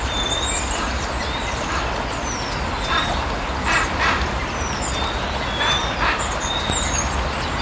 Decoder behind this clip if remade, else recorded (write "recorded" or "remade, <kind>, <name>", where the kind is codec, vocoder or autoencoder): remade, vocoder, BigVGAN v2